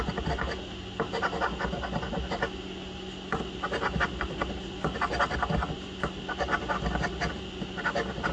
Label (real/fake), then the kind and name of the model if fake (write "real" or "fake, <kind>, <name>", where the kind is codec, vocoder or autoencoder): real